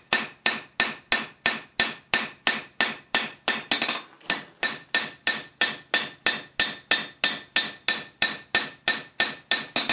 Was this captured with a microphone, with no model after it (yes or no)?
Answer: yes